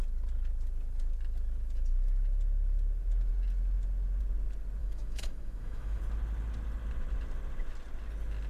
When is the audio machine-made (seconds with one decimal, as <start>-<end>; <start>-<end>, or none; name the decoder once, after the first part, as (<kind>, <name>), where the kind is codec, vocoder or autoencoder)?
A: 4.8-6.0 (autoencoder, DAC-VAE)